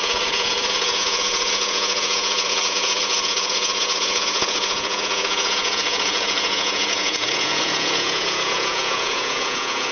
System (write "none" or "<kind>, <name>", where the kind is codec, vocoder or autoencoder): vocoder, Vocos